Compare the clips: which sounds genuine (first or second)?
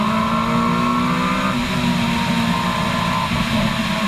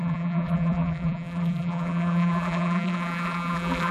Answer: first